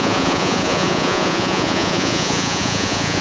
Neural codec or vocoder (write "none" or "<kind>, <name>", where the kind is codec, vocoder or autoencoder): vocoder, Vocos